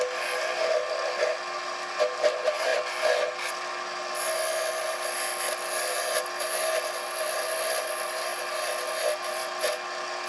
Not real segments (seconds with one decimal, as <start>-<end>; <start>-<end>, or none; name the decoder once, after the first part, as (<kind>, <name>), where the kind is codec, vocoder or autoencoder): none